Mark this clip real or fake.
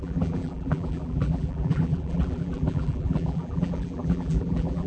fake